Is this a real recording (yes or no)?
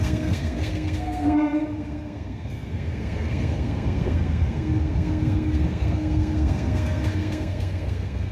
no